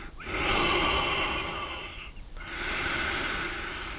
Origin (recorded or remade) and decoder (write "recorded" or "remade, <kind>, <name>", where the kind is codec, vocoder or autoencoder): recorded